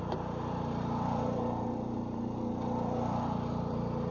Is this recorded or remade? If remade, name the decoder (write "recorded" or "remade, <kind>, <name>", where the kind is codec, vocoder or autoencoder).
remade, vocoder, BigVGAN v2